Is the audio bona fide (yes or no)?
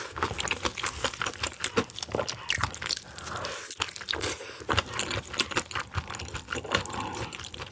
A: yes